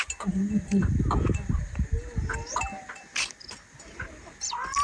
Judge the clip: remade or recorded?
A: recorded